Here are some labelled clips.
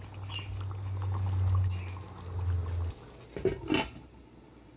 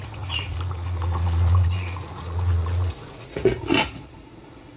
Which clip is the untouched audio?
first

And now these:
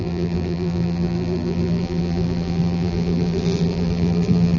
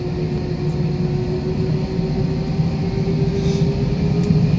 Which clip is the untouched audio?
second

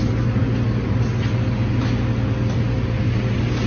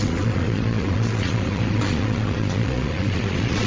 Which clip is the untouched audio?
first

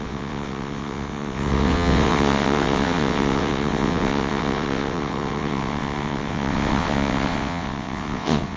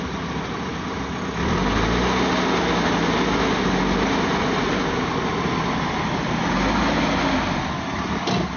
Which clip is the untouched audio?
second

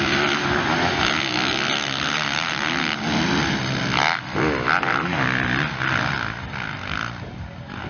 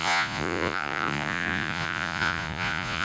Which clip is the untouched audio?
first